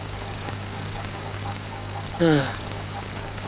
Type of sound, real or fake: fake